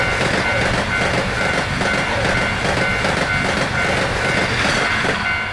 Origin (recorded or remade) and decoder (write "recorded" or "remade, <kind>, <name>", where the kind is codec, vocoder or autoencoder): recorded